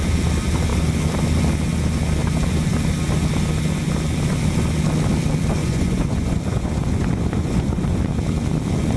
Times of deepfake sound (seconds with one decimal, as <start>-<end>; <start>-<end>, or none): 5.6-8.0